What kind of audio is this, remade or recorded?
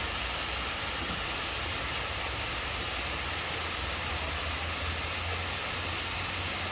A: recorded